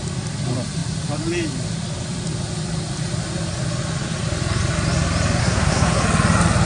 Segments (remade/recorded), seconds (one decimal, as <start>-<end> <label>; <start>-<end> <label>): 0.0-5.4 recorded; 5.4-6.0 remade; 6.0-6.7 recorded